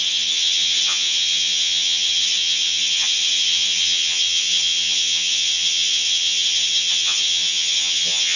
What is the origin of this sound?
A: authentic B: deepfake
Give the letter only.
B